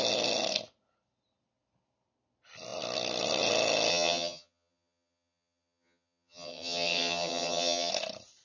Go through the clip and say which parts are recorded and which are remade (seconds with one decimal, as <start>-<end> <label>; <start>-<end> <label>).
0.0-3.9 recorded; 3.9-7.9 remade; 7.9-8.4 recorded

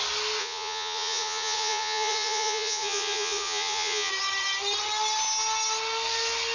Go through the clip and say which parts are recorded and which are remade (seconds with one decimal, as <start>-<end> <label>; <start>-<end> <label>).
0.0-0.4 recorded; 0.4-4.1 remade; 4.1-6.5 recorded

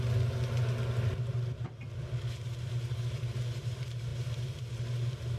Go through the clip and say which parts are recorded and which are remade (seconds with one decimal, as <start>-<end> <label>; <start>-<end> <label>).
0.0-5.4 recorded

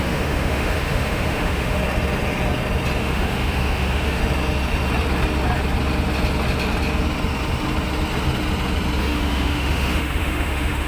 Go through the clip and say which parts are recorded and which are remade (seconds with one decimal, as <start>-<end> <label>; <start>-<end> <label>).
0.0-1.8 remade; 1.8-3.0 recorded; 3.0-4.2 remade; 4.2-9.0 recorded; 9.0-10.9 remade